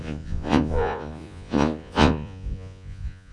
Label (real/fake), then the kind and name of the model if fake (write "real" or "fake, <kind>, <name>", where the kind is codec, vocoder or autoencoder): fake, vocoder, Vocos